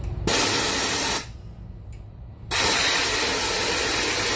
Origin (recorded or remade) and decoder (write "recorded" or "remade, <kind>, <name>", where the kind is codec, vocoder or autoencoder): recorded